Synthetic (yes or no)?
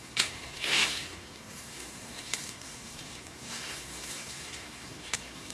yes